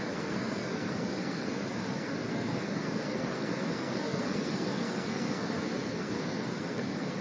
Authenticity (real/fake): fake